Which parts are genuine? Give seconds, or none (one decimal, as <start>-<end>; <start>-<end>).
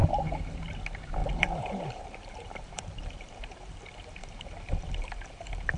0.0-1.2; 3.8-4.2